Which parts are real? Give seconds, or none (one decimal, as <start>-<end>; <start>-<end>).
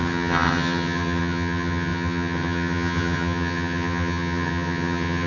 none